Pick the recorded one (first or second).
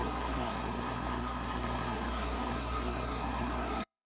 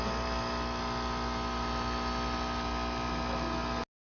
second